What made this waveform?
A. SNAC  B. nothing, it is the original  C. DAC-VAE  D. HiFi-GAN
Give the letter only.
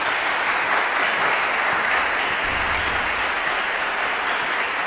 B